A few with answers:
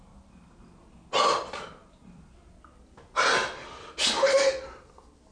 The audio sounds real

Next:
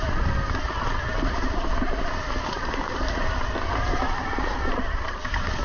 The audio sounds real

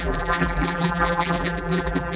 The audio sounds fake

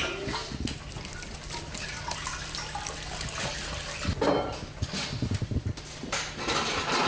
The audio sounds real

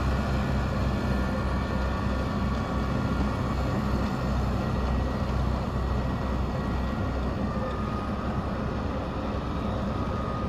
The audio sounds real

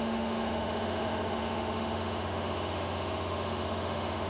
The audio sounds fake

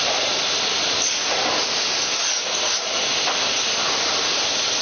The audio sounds real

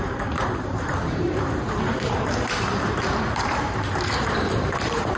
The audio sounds fake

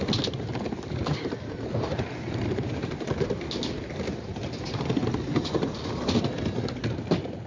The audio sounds real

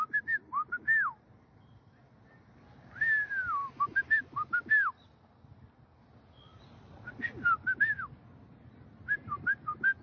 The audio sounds real